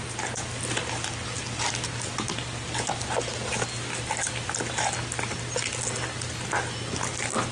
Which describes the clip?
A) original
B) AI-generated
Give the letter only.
A